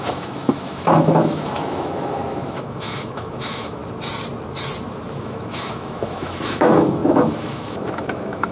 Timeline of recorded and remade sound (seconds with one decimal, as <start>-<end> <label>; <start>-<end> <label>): 0.0-3.8 remade; 3.8-5.2 recorded; 5.2-8.5 remade